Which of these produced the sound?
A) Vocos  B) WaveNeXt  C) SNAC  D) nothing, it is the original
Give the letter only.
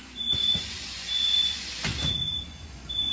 A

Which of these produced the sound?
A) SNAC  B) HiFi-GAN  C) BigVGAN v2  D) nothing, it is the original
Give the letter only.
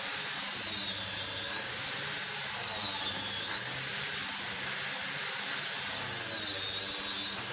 D